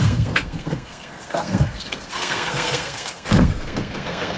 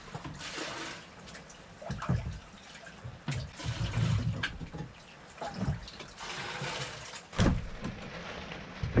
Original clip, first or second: second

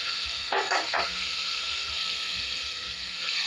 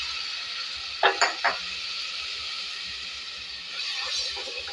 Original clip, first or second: second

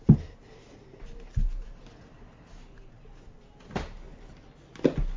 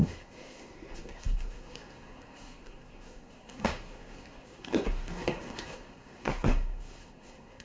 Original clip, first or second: first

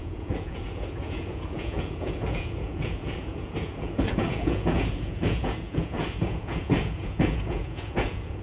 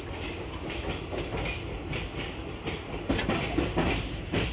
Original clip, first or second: second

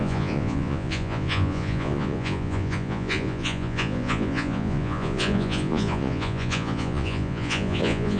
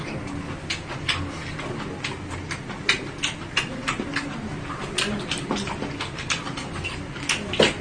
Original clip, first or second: second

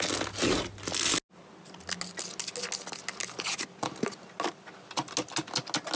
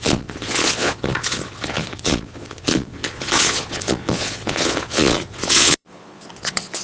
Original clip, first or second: first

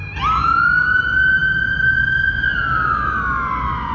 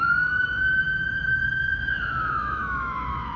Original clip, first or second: first